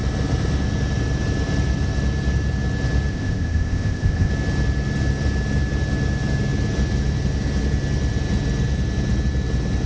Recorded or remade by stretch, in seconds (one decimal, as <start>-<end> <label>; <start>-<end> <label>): 0.0-3.1 recorded; 3.1-4.3 remade; 4.3-9.9 recorded